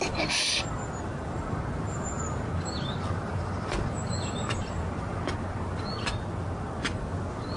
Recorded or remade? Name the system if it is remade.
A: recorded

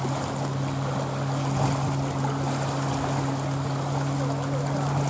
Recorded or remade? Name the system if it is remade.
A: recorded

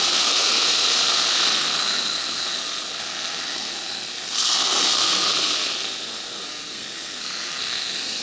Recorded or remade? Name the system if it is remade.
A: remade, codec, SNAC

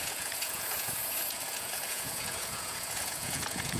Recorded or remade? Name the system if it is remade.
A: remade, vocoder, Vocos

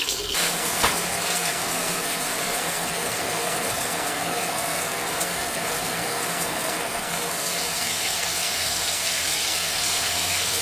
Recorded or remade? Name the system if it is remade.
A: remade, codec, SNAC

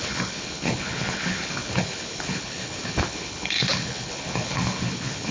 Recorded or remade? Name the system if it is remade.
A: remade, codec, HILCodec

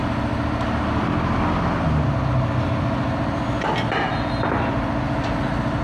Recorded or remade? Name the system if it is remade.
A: recorded